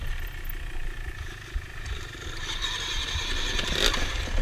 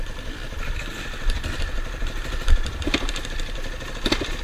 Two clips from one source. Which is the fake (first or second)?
second